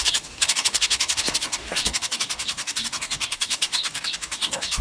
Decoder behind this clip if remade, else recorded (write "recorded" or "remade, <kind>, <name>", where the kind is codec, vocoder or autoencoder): remade, codec, DAC